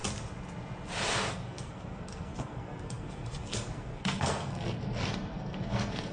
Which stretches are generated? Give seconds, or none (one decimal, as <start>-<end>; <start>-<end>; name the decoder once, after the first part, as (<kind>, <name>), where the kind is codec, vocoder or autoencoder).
1.3-6.1 (codec, SNAC)